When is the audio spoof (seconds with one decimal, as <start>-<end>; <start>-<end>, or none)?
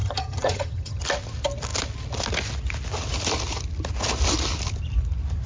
0.0-1.0